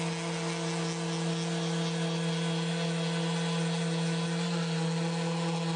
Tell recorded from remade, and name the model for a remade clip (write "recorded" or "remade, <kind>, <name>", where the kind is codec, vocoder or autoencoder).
recorded